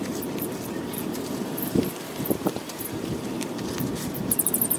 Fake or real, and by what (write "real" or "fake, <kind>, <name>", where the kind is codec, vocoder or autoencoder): fake, vocoder, BigVGAN v2